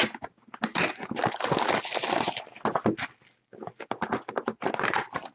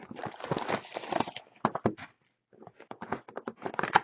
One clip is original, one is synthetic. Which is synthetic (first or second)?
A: second